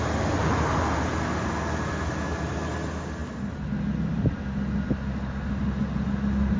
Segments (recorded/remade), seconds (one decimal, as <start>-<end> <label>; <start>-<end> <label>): 0.0-6.6 recorded

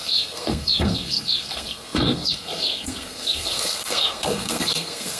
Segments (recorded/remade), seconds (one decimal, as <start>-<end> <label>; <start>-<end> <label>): 0.0-5.2 remade